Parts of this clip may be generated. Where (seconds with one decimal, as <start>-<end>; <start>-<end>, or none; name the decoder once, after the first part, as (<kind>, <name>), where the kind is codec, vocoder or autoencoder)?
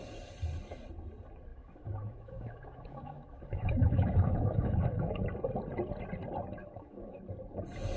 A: 1.5-5.2 (autoencoder, DAC-VAE); 6.6-7.2